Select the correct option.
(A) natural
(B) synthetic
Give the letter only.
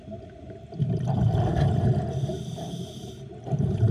A